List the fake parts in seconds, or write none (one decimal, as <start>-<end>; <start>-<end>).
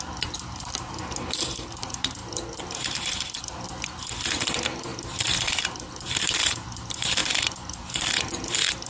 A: none